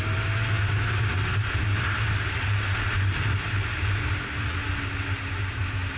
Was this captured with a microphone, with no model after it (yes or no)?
yes